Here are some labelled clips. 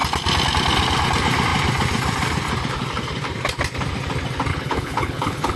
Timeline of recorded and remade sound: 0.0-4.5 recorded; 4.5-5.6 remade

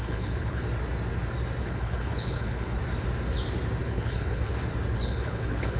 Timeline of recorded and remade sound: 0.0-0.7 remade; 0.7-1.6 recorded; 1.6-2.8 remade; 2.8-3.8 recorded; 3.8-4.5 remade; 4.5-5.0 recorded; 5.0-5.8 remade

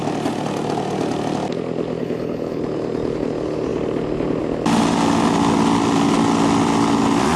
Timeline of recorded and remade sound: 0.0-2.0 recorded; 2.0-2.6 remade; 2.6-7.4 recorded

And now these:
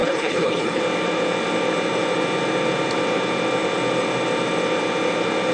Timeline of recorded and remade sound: 0.0-0.8 remade; 0.8-5.5 recorded

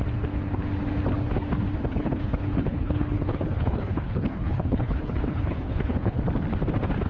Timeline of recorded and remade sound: 0.0-1.9 recorded; 1.9-6.2 remade; 6.2-7.1 recorded